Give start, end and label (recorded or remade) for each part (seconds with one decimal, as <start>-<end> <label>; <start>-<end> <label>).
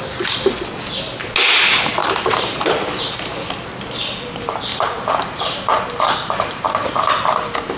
0.0-2.0 recorded; 2.0-3.0 remade; 3.0-4.7 recorded; 4.7-7.1 remade; 7.1-7.8 recorded